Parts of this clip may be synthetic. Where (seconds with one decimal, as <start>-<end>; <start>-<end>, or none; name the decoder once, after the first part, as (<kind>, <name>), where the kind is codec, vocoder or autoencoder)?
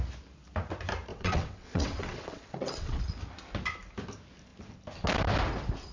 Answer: 1.1-3.0 (vocoder, WaveNeXt)